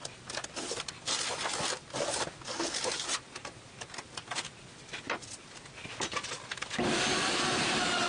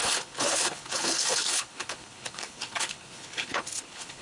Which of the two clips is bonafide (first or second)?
first